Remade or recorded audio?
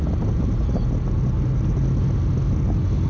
recorded